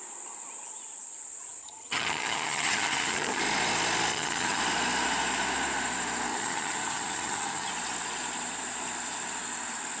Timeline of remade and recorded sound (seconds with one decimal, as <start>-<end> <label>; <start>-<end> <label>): 0.0-1.6 recorded; 1.6-3.4 remade; 3.4-4.1 recorded; 4.1-4.6 remade; 4.6-6.3 recorded; 6.3-7.7 remade; 7.7-10.0 recorded